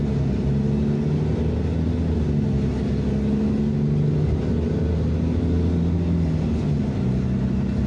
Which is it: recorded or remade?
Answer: recorded